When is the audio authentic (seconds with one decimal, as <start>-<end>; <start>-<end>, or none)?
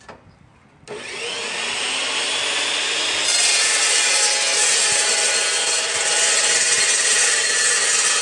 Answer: 0.0-3.2; 4.0-4.5; 7.5-8.2